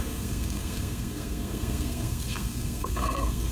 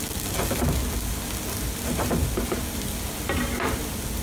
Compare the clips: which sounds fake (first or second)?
first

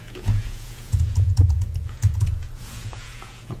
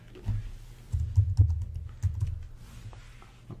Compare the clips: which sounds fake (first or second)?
first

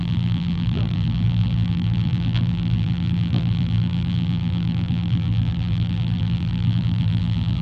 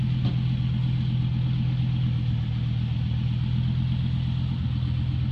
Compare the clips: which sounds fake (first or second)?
first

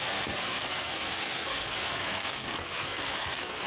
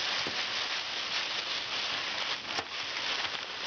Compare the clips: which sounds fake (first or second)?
first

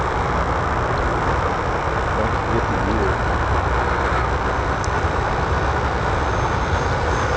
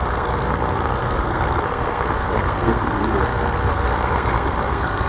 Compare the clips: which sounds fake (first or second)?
second